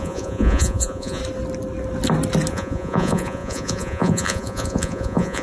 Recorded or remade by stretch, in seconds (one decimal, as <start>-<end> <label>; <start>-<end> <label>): 0.0-1.2 remade; 1.2-2.5 recorded; 2.5-5.4 remade